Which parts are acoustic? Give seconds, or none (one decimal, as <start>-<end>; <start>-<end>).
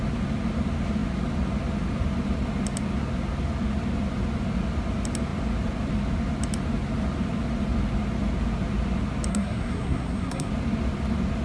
0.0-9.3; 10.5-11.4